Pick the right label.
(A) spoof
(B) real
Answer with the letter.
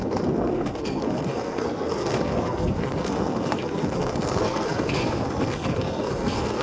A